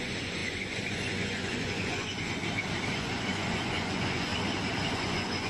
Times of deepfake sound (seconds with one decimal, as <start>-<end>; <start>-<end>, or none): 0.0-2.4; 2.9-4.3; 4.9-5.5